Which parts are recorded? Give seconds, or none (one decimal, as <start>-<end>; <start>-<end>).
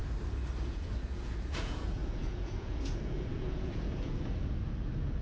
0.0-0.7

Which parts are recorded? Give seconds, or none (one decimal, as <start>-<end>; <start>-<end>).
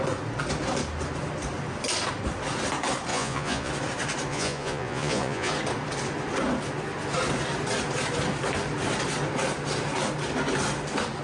0.0-3.1; 3.7-4.3; 5.5-11.2